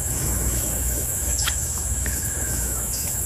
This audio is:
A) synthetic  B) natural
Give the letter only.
A